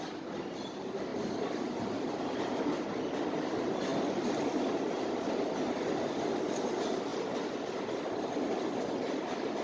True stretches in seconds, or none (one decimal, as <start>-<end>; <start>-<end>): 0.0-9.6